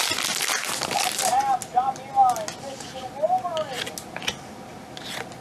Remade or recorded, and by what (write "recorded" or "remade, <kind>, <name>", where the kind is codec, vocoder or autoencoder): recorded